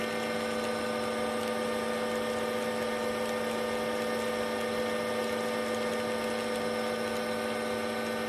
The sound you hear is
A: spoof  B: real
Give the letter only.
B